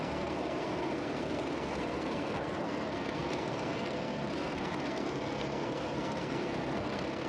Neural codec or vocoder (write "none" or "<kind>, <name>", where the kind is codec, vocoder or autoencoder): codec, SNAC